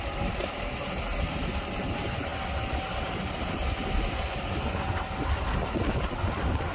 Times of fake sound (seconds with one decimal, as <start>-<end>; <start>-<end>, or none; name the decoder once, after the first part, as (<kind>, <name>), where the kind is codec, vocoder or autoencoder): none